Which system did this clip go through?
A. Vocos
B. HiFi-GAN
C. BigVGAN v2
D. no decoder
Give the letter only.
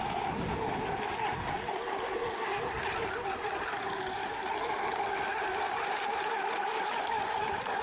D